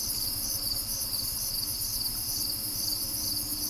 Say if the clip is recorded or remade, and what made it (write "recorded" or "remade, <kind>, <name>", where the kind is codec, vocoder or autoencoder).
recorded